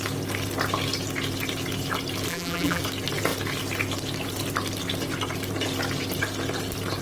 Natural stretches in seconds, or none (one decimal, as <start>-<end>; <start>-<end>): 0.0-2.3; 2.8-7.0